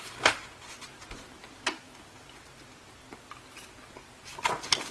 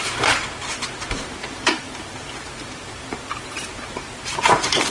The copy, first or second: second